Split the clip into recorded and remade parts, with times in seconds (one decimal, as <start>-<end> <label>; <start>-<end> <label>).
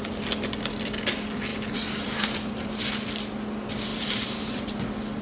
0.0-1.5 recorded; 1.5-2.8 remade; 2.8-3.9 recorded; 3.9-4.8 remade; 4.8-5.2 recorded